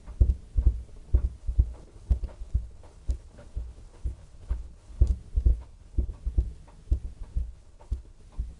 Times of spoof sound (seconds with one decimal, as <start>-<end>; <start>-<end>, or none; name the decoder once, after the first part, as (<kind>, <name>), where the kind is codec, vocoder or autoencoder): 1.4-5.0 (codec, HILCodec); 5.5-6.1; 7.4-8.2